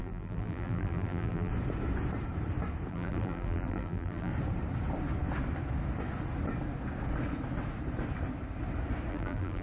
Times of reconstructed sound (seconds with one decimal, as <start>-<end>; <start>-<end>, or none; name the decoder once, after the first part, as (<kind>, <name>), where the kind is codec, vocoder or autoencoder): 0.0-1.5 (vocoder, BigVGAN v2); 2.9-4.3; 9.1-9.6